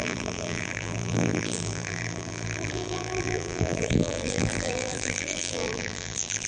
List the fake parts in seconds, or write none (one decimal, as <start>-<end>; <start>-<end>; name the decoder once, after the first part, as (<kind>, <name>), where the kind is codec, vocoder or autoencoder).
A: 0.0-6.5 (vocoder, BigVGAN v2)